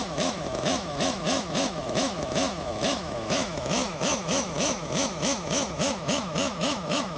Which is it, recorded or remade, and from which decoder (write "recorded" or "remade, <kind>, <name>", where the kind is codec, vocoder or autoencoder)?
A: remade, autoencoder, DAC-VAE